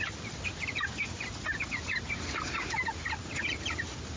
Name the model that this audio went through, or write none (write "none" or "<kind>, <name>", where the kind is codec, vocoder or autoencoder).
none